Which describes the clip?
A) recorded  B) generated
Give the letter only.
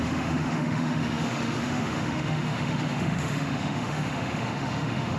B